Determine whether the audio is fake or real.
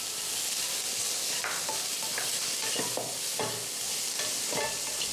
real